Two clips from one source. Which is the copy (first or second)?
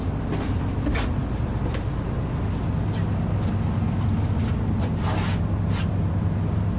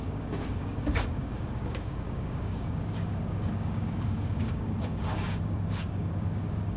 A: second